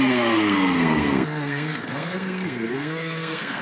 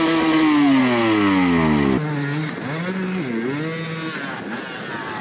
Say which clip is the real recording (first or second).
second